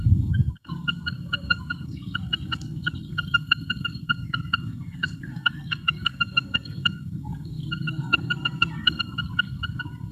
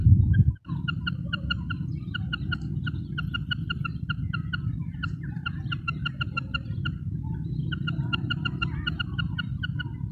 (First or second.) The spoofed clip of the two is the first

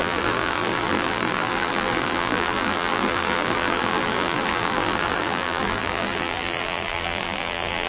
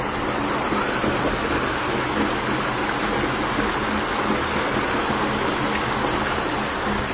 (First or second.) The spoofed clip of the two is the first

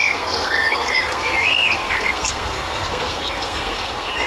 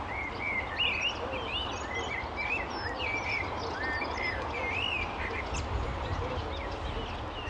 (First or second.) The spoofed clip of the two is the first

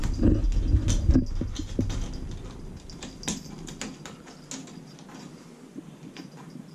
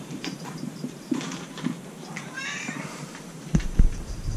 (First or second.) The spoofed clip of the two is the second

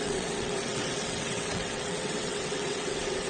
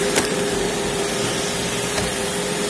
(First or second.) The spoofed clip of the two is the first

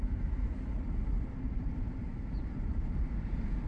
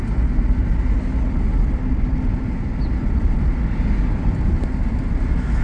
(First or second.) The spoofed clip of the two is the first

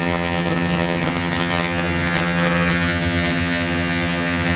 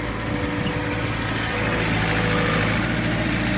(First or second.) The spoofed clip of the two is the first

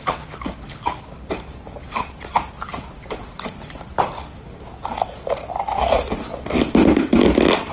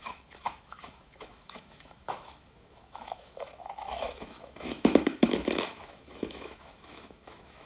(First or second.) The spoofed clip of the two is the second